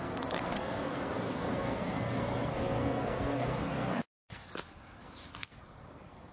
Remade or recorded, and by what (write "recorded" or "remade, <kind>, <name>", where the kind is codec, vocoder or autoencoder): remade, codec, SNAC